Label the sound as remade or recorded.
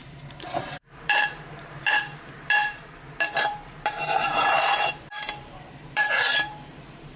remade